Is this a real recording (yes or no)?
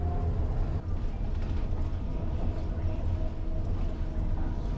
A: yes